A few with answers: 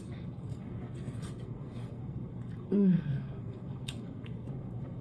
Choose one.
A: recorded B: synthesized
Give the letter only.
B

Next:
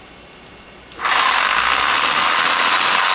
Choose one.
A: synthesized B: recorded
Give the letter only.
B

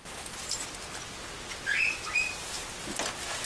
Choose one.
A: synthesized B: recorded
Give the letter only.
B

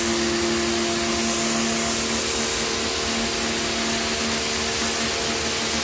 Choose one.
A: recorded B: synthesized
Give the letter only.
A